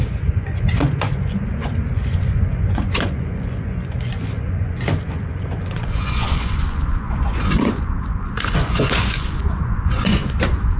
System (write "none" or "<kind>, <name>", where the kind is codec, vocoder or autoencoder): vocoder, Vocos